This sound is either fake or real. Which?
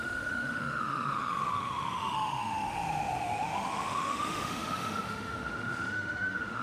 fake